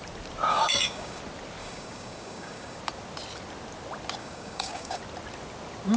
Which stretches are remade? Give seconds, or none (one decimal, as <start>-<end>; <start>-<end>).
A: 0.5-1.2; 1.6-2.8; 4.2-5.0